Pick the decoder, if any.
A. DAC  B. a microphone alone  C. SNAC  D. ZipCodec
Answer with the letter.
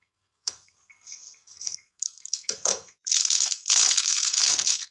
C